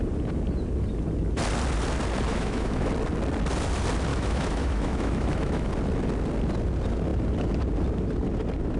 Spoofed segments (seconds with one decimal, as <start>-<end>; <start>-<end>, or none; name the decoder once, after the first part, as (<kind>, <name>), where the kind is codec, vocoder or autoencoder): 2.3-2.9 (autoencoder, DAC-VAE); 4.1-5.7